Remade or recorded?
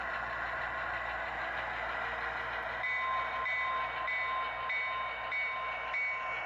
recorded